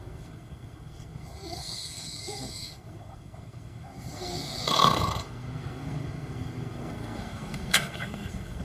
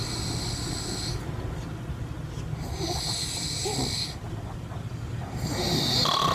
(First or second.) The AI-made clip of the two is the first